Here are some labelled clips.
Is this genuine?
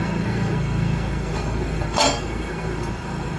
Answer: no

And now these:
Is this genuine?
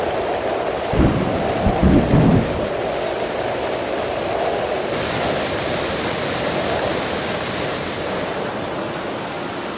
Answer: yes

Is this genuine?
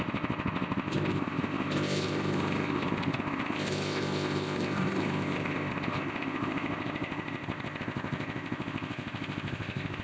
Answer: no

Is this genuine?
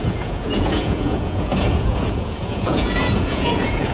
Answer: no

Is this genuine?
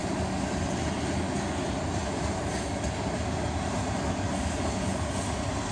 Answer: yes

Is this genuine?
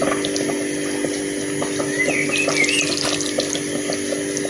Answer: yes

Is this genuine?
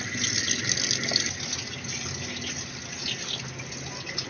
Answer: yes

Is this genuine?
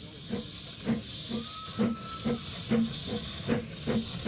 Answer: yes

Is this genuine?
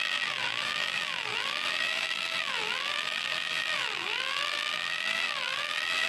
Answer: no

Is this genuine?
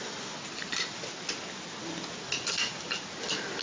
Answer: yes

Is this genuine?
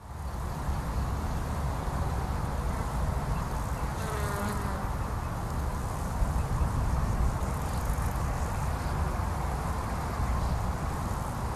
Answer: yes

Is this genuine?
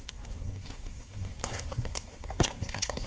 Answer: no